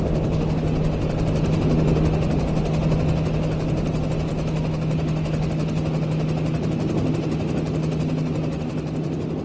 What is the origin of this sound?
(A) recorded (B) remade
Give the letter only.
A